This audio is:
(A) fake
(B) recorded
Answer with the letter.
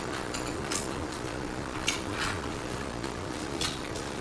A